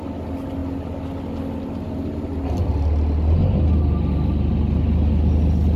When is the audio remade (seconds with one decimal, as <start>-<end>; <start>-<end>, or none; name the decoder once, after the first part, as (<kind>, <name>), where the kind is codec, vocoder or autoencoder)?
none